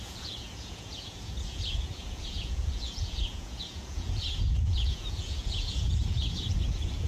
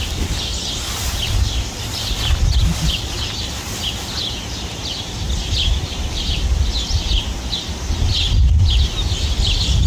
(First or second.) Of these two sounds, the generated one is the first